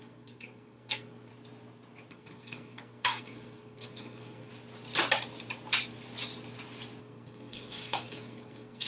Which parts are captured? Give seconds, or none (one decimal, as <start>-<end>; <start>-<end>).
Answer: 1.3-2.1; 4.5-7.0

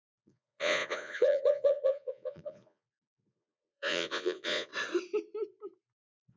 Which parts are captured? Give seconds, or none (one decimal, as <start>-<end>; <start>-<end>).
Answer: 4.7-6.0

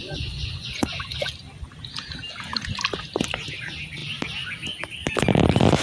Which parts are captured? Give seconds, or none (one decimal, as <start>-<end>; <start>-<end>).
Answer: 1.3-5.8

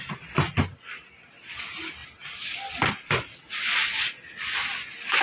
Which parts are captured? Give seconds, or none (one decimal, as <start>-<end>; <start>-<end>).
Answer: 0.0-5.2

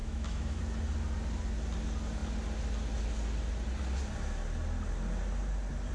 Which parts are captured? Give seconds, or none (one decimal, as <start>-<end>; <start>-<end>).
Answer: 0.6-5.9

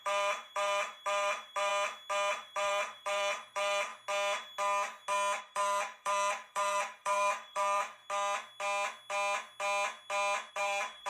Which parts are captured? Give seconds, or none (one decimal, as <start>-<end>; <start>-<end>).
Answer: 1.7-2.3; 3.9-5.4; 8.0-10.5

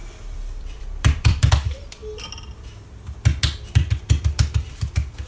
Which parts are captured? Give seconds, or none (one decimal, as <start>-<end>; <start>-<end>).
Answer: 2.0-3.7